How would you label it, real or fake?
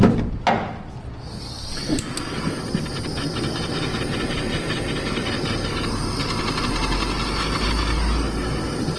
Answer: real